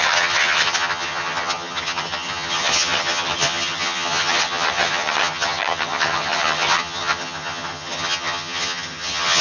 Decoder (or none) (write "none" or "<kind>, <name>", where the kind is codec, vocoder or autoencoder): vocoder, HiFi-GAN